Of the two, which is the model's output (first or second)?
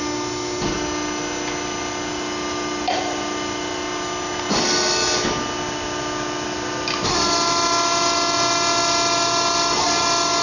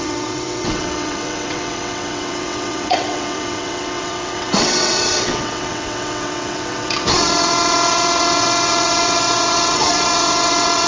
second